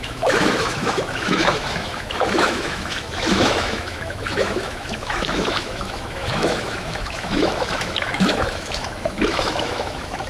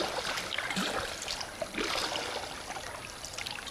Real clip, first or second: second